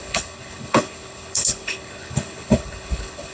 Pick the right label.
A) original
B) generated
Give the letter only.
B